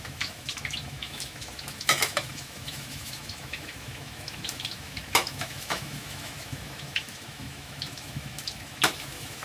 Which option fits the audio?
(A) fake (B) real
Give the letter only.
A